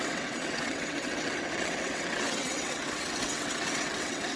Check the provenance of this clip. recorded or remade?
remade